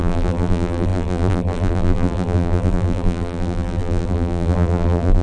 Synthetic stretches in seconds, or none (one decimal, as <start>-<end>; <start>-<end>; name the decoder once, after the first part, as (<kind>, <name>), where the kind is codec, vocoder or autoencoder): 0.0-5.2 (vocoder, BigVGAN v2)